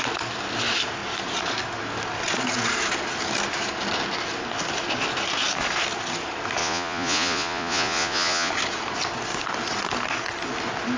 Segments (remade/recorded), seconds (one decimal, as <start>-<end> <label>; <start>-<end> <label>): 0.0-6.6 recorded; 6.6-8.5 remade; 8.5-11.0 recorded